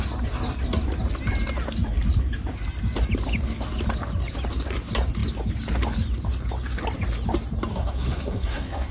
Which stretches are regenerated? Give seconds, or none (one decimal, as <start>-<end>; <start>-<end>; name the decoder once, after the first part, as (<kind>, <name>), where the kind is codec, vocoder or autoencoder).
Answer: 7.7-8.9 (codec, SNAC)